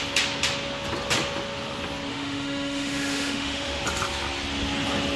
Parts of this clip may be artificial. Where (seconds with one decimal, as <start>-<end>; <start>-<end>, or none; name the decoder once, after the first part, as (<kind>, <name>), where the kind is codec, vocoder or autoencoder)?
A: 2.1-3.8 (autoencoder, DAC-VAE)